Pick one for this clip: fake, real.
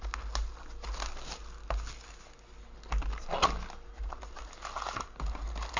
real